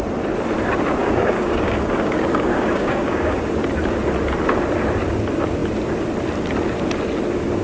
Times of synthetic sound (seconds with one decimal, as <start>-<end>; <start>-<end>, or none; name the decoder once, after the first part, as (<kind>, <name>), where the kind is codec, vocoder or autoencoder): 1.0-3.4 (codec, DAC)